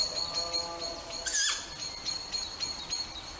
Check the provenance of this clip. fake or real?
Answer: real